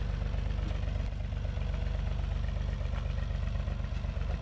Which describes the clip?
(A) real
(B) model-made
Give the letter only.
A